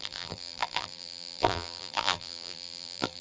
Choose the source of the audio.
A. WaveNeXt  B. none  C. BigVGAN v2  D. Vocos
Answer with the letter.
C